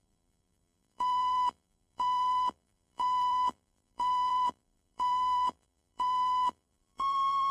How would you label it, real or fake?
fake